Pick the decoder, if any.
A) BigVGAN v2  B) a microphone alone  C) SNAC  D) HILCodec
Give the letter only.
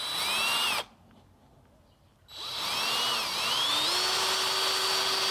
B